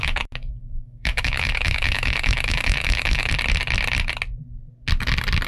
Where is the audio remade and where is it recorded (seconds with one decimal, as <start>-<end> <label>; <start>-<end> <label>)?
0.0-3.3 remade; 3.3-5.5 recorded

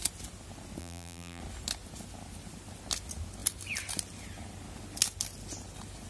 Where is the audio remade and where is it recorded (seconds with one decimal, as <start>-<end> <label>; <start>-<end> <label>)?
0.0-0.8 recorded; 0.8-1.4 remade; 1.4-6.1 recorded

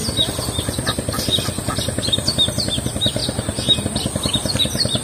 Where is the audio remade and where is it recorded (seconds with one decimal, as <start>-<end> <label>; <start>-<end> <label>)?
0.0-3.2 recorded; 3.2-3.8 remade; 3.8-5.0 recorded

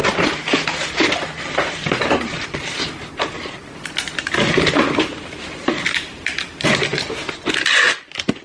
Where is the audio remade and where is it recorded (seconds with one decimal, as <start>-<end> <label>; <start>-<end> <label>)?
0.0-6.9 recorded; 6.9-8.4 remade

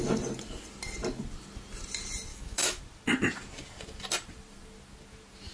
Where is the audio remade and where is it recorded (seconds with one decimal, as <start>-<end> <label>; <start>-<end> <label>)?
0.0-2.3 recorded; 2.3-2.8 remade; 2.8-5.5 recorded

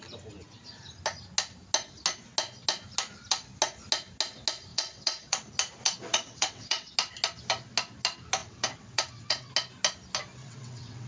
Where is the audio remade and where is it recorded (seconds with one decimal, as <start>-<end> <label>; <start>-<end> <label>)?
0.0-4.7 recorded; 4.7-5.5 remade; 5.5-6.1 recorded; 6.1-6.9 remade; 6.9-8.4 recorded; 8.4-9.5 remade; 9.5-10.4 recorded; 10.4-11.1 remade

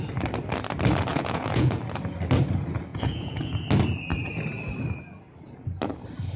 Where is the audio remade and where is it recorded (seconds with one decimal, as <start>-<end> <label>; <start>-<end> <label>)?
0.0-1.1 recorded; 1.1-1.8 remade; 1.8-2.9 recorded; 2.9-3.6 remade; 3.6-6.4 recorded

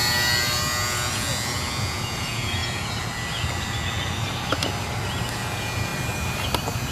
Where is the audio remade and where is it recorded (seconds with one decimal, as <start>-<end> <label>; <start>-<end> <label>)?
0.0-1.8 recorded; 1.8-2.6 remade; 2.6-5.3 recorded; 5.3-5.9 remade; 5.9-6.9 recorded